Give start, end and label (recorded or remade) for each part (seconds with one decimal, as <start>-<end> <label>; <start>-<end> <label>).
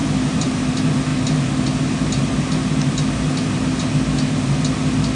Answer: 0.0-0.7 remade; 0.7-5.2 recorded